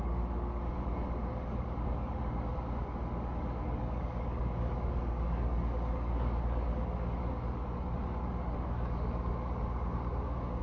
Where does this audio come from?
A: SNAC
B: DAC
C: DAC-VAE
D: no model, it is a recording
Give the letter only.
B